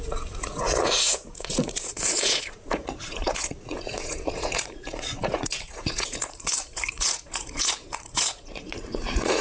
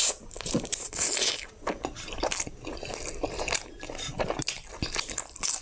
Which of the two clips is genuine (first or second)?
second